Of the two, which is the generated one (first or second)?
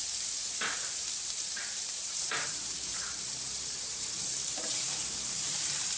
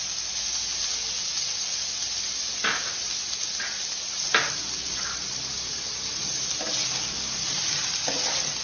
first